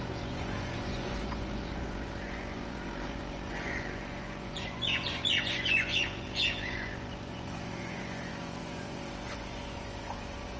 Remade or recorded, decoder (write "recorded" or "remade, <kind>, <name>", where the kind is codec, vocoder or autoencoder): remade, vocoder, Vocos